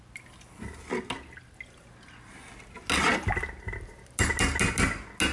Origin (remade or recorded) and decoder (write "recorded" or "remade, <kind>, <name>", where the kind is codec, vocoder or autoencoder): recorded